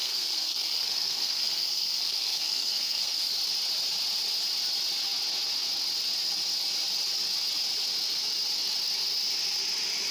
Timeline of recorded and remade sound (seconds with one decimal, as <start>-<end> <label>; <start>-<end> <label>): 0.0-3.3 remade; 3.3-10.1 recorded